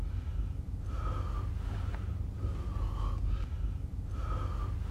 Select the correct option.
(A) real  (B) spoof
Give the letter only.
A